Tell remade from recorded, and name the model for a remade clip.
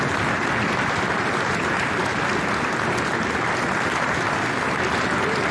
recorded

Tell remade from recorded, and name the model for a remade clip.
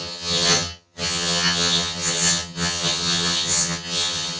remade, vocoder, HiFi-GAN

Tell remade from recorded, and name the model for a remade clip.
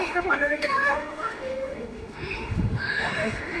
remade, autoencoder, DAC-VAE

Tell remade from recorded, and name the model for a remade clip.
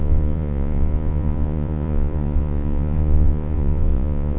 remade, vocoder, Vocos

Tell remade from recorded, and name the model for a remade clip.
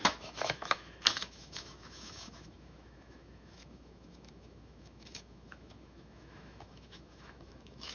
remade, autoencoder, DAC-VAE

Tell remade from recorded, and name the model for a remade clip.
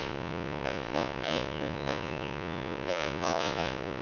remade, vocoder, Vocos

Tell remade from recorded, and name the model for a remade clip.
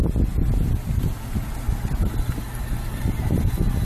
recorded